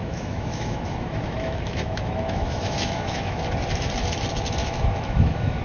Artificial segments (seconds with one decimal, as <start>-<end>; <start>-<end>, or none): 0.0-3.4; 4.6-5.6